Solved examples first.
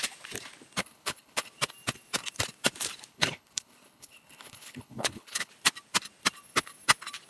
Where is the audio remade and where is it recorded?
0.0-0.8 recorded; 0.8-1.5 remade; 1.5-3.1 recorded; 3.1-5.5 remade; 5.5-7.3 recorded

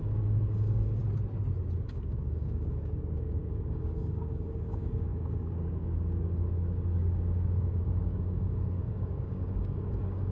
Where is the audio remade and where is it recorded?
0.0-1.0 remade; 1.0-1.9 recorded; 1.9-10.3 remade

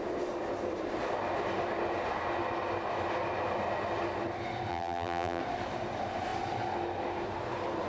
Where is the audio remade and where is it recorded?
0.0-4.7 recorded; 4.7-5.4 remade; 5.4-7.9 recorded